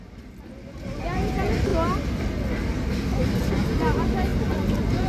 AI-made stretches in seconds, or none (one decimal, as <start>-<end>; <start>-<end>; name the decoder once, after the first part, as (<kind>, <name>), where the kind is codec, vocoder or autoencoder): none